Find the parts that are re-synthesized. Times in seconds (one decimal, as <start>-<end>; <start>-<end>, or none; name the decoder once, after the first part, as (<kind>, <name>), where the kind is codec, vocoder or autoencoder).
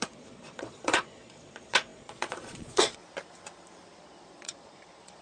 0.0-3.0 (vocoder, Vocos); 4.0-5.2